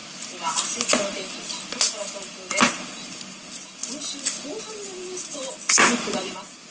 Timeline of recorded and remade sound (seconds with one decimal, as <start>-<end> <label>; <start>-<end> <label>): 0.0-6.7 recorded